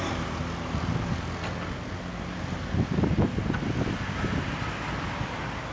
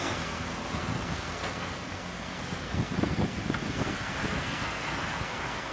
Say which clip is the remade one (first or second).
second